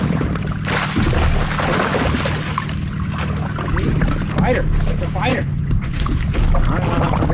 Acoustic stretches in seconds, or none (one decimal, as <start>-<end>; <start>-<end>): 0.0-5.3; 6.2-7.3